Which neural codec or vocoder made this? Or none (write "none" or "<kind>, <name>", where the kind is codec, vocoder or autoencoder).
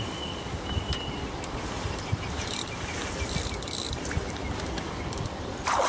vocoder, BigVGAN v2